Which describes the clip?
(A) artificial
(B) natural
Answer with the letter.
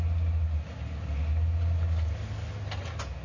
B